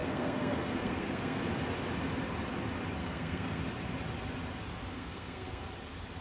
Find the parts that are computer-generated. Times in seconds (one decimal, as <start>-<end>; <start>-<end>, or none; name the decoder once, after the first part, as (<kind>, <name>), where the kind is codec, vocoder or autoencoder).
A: 0.0-1.4 (codec, SNAC); 3.0-3.6; 4.9-5.6